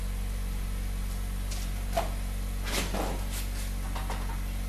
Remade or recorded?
recorded